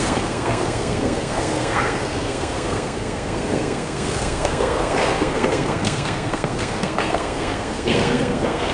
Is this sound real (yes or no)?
no